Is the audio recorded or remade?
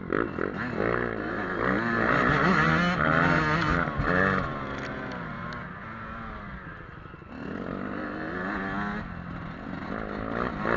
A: recorded